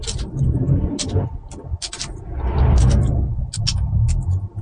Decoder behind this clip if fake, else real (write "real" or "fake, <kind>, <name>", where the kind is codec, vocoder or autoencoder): real